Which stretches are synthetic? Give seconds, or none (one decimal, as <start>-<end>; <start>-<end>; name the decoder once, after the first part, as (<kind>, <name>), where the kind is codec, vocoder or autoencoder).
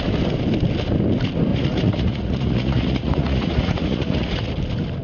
1.5-4.5 (vocoder, Vocos)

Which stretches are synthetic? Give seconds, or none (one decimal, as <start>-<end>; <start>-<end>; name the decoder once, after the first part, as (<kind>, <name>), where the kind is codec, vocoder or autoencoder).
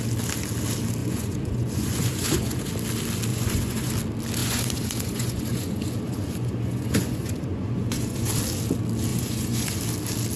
1.0-2.7 (vocoder, Vocos); 3.3-3.9; 4.4-8.3; 9.1-9.8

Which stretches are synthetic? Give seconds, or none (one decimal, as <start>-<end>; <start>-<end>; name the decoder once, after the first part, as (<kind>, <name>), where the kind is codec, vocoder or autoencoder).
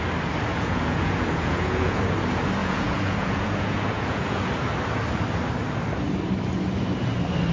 0.5-2.0 (vocoder, Vocos); 2.6-4.5